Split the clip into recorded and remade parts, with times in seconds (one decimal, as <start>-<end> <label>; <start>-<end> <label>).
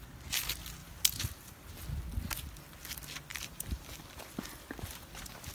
0.0-0.8 recorded; 0.8-1.7 remade; 1.7-3.3 recorded; 3.3-3.9 remade; 3.9-5.5 recorded